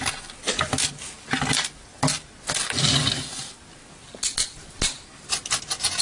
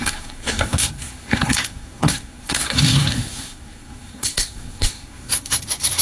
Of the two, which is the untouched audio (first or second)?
first